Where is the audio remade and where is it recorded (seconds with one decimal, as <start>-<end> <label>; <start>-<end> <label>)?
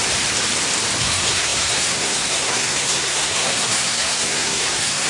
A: 0.0-1.0 recorded; 1.0-5.1 remade